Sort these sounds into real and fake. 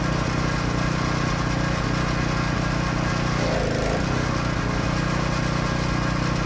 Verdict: real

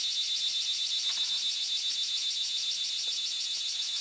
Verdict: fake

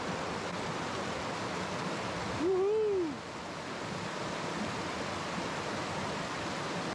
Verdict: real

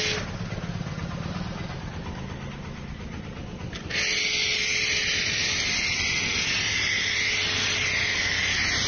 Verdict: real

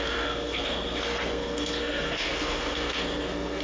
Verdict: fake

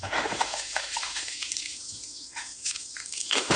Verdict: fake